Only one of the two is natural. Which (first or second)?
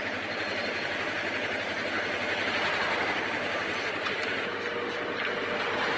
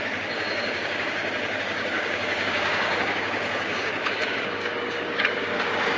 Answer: first